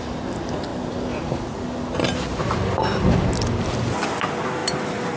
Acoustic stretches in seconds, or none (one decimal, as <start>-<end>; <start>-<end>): 0.0-5.2